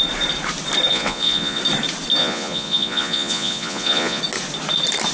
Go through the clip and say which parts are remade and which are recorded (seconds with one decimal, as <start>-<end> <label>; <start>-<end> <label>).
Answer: 0.0-0.9 recorded; 0.9-1.6 remade; 1.6-2.2 recorded; 2.2-4.2 remade; 4.2-5.1 recorded

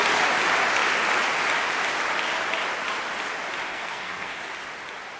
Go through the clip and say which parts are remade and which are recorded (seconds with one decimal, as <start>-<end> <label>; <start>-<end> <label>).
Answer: 0.0-3.7 recorded; 3.7-4.5 remade; 4.5-5.2 recorded

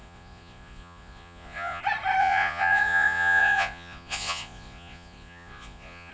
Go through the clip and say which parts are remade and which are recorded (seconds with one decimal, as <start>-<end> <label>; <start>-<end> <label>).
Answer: 0.0-1.8 remade; 1.8-2.2 recorded; 2.2-6.1 remade

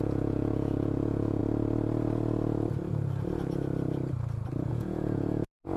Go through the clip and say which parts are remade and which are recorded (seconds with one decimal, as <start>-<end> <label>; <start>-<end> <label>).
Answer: 0.0-1.4 remade; 1.4-4.7 recorded; 4.7-5.8 remade

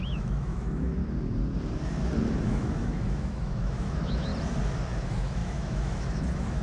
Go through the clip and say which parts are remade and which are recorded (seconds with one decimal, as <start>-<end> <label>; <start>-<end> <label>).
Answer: 0.0-1.0 remade; 1.0-2.4 recorded; 2.4-4.3 remade; 4.3-4.9 recorded; 4.9-6.6 remade

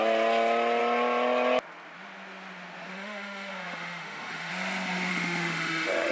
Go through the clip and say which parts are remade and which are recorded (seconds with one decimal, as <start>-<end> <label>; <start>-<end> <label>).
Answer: 0.0-2.9 recorded; 2.9-4.5 remade; 4.5-5.1 recorded; 5.1-6.1 remade

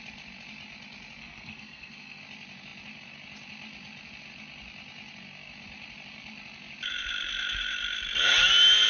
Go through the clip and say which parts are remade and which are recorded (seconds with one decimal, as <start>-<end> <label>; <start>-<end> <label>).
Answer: 0.0-1.2 recorded; 1.2-2.2 remade; 2.2-8.9 recorded

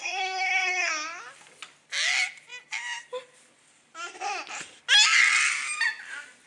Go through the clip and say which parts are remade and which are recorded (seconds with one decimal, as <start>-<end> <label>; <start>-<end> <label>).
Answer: 0.0-0.9 remade; 0.9-6.5 recorded